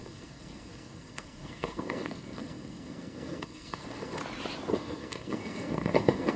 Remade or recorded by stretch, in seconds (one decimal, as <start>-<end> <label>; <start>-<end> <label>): 0.0-4.2 remade; 4.2-4.7 recorded; 4.7-6.4 remade